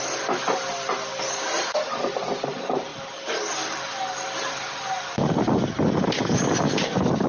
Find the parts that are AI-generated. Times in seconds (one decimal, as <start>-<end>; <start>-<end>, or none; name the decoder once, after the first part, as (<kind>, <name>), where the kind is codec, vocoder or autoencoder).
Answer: none